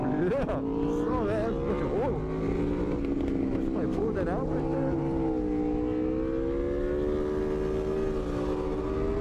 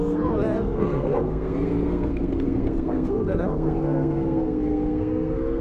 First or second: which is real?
first